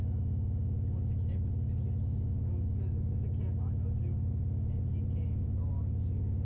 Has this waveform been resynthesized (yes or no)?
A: no